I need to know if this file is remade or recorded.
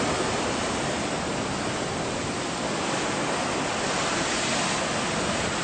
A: recorded